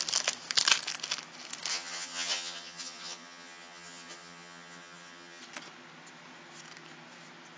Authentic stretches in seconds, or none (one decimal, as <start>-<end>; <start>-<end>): 0.0-1.7; 5.4-7.6